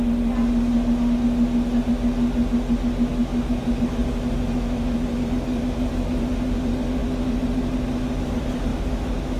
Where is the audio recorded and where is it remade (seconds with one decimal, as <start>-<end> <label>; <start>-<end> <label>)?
0.0-3.1 recorded; 3.1-3.6 remade; 3.6-8.7 recorded; 8.7-9.4 remade